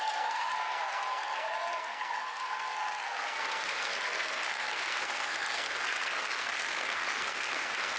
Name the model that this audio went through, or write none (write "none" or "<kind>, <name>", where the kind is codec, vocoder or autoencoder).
codec, SNAC